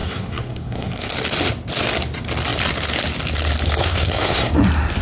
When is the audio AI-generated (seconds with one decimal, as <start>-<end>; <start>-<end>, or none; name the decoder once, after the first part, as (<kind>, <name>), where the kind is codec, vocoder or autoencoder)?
0.0-1.1 (codec, SNAC); 3.8-4.5